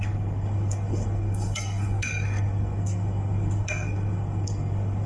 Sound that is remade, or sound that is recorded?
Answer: remade